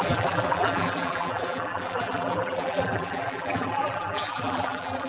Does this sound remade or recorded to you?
remade